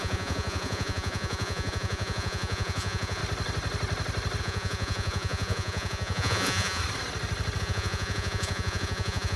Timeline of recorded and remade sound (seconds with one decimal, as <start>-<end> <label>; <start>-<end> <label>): 0.0-3.2 remade; 3.2-4.4 recorded; 4.4-6.8 remade; 6.8-7.6 recorded; 7.6-9.4 remade